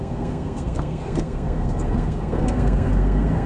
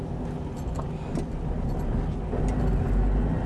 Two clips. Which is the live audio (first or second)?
second